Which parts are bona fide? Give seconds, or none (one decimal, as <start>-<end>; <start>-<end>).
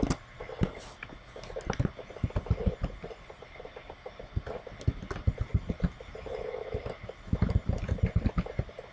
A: 0.0-8.9